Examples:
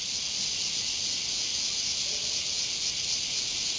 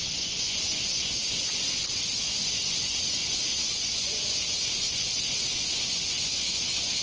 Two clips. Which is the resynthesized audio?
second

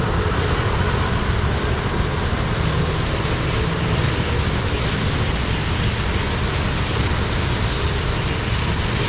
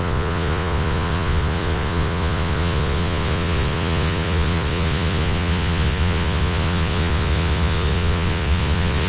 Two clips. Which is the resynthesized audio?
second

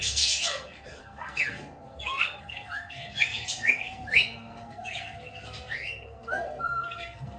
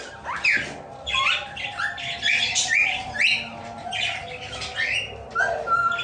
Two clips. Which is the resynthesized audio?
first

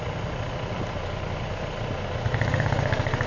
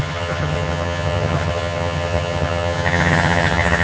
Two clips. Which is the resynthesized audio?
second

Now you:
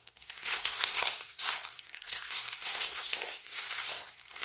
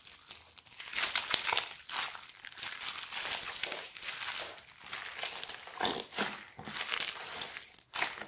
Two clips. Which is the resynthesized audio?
first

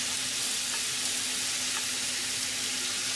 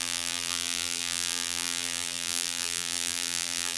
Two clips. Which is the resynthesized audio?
second